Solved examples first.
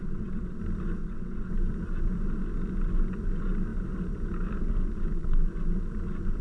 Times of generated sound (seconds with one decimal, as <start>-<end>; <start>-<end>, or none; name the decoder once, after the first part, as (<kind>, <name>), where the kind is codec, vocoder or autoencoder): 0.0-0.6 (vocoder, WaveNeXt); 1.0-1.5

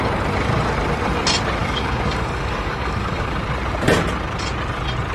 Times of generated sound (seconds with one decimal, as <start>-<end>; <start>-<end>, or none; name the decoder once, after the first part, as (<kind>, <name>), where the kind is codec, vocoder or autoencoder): 1.6-3.4 (codec, DAC)

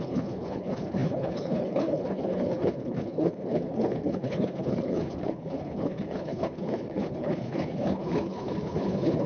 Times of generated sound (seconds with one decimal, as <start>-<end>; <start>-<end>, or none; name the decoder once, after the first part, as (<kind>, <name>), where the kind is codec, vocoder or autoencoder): 0.0-9.3 (codec, HILCodec)

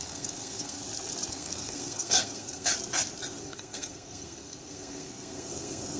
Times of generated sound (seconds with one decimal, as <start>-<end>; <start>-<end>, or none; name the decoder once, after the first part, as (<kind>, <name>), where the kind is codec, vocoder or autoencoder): 0.0-0.8 (codec, SNAC); 1.3-2.7; 3.4-6.0

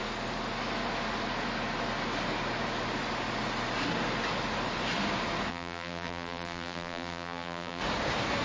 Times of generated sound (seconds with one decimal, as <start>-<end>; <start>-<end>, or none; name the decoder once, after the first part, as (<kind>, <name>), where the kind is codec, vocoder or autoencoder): 5.5-7.8 (vocoder, BigVGAN v2)

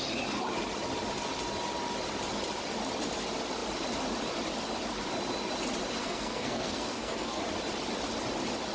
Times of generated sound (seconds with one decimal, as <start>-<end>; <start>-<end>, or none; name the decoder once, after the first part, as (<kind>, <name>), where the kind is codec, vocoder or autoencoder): 6.0-7.4 (codec, SNAC)